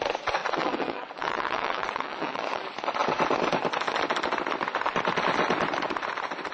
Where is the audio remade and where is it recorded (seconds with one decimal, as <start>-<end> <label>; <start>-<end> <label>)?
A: 0.0-0.4 recorded; 0.4-2.6 remade; 2.6-6.5 recorded